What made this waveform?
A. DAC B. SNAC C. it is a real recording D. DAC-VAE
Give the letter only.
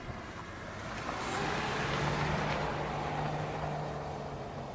C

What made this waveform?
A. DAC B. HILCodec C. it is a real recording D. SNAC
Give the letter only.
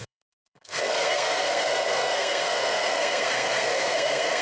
D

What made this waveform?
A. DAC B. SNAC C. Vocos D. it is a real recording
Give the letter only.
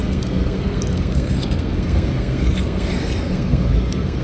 B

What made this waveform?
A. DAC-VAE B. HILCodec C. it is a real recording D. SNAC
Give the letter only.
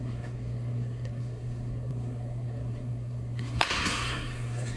D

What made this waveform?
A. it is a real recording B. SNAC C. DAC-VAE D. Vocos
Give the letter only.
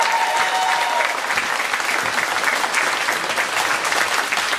A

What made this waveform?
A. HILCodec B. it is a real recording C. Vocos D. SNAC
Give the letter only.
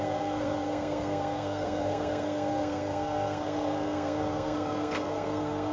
D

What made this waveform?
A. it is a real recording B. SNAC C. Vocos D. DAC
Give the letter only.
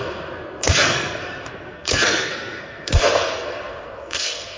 B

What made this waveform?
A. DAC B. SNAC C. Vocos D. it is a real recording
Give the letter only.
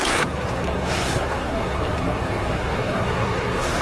B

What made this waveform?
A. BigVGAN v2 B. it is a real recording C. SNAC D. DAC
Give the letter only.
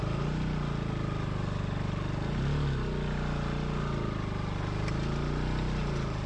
B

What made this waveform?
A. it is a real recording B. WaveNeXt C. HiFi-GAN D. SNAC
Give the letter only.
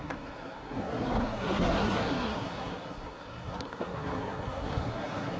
D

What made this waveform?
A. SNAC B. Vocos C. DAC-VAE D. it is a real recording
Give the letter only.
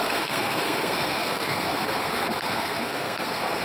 A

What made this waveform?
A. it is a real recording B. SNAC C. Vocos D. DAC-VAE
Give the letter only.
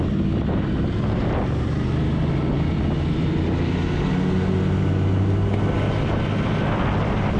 A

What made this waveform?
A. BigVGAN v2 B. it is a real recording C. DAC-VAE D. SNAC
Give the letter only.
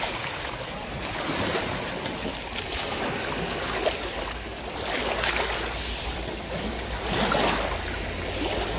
B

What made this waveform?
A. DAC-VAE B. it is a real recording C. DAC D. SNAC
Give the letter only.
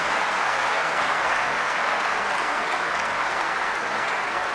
D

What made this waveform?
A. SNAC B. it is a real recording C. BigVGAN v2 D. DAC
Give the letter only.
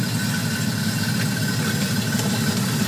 B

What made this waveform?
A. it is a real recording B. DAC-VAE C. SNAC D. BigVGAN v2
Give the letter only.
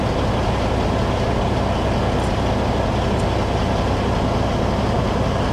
A